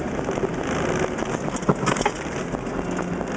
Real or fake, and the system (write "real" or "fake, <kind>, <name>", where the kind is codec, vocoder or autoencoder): real